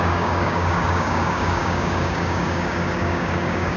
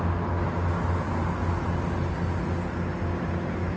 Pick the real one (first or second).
second